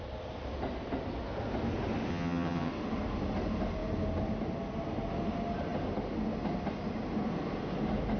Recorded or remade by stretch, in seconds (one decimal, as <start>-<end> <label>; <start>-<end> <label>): 0.0-2.1 recorded; 2.1-2.7 remade; 2.7-8.2 recorded